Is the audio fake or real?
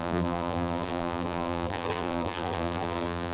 fake